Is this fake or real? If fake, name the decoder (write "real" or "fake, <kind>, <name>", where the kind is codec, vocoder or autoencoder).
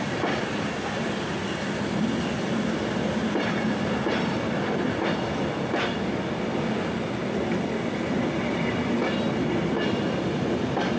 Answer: real